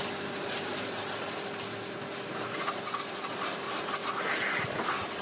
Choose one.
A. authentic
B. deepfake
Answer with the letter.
A